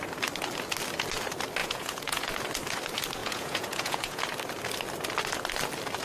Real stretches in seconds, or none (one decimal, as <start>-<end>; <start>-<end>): 0.0-1.6; 2.3-3.2; 4.2-6.0